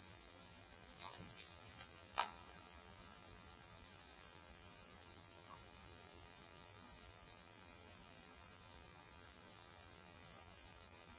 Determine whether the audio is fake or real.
fake